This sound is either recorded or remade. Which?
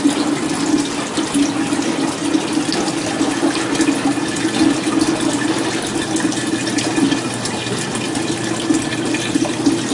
recorded